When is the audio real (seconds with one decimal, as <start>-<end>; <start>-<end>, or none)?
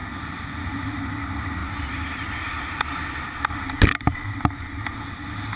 0.0-1.6; 5.0-5.6